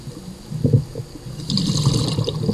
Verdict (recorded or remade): recorded